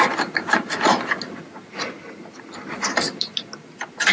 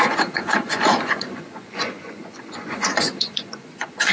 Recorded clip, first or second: first